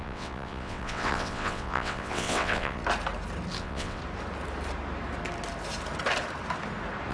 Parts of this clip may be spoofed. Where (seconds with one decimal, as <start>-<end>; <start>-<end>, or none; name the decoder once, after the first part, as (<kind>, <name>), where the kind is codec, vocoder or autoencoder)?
0.0-2.8 (vocoder, WaveNeXt); 3.6-4.0